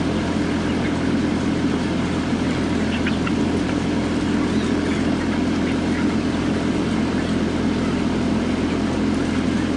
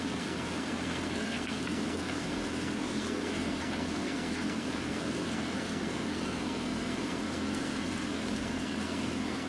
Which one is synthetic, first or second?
second